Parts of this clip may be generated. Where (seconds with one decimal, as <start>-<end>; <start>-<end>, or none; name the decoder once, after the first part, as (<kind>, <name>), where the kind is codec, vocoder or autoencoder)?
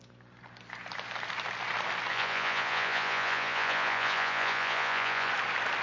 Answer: 2.1-5.3 (vocoder, Vocos)